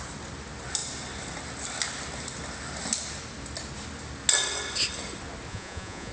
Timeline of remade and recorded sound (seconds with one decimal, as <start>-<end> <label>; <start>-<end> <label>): 0.0-5.5 recorded; 5.5-6.1 remade